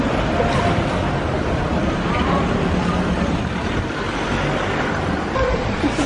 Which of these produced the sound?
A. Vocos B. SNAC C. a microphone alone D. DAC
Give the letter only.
C